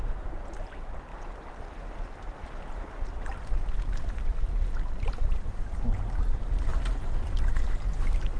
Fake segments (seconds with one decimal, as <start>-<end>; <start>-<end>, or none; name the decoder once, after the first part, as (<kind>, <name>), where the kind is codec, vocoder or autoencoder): 1.1-3.5 (vocoder, BigVGAN v2); 4.3-5.5